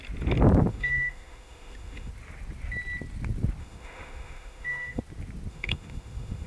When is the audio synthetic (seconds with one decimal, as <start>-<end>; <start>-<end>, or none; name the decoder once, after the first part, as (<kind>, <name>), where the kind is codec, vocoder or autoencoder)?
0.7-2.1 (autoencoder, DAC-VAE); 3.6-5.0; 5.5-6.5